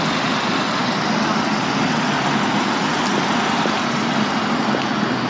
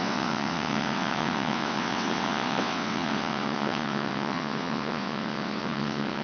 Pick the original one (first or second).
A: first